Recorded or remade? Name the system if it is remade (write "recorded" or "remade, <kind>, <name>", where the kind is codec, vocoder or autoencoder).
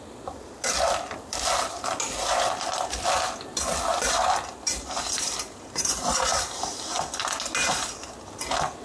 recorded